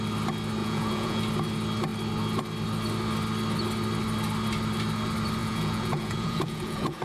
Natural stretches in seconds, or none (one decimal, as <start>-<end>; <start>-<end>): 0.0-0.6; 1.2-5.4